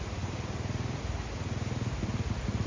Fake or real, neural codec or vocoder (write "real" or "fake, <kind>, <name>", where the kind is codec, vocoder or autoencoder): real